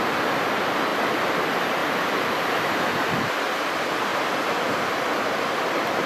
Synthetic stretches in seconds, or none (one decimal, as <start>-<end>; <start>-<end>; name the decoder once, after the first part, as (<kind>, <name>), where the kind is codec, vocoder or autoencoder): 0.9-1.4 (vocoder, BigVGAN v2); 1.8-2.7; 4.1-6.1